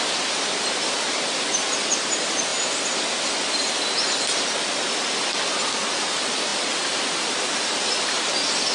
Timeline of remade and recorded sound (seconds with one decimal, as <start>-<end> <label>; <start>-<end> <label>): 0.0-8.7 recorded